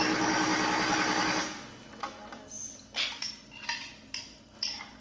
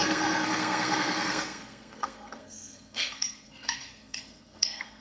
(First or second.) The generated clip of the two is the second